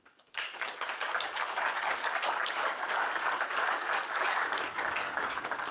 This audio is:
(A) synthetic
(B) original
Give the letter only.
A